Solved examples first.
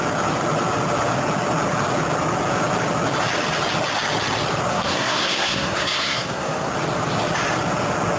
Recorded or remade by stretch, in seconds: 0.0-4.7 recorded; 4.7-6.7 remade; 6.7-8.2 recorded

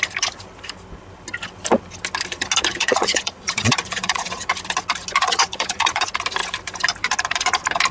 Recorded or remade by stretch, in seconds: 0.0-2.7 recorded; 2.7-4.5 remade; 4.5-5.2 recorded; 5.2-6.0 remade; 6.0-7.9 recorded

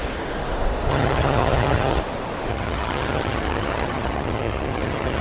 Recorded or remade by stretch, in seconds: 0.0-0.9 recorded; 0.9-2.0 remade; 2.0-2.5 recorded; 2.5-5.2 remade

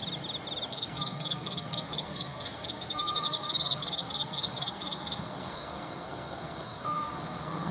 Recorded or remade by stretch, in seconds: 0.0-0.7 recorded; 0.7-7.7 remade